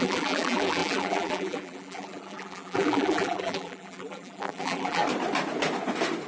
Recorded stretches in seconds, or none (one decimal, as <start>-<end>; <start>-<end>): 5.0-6.3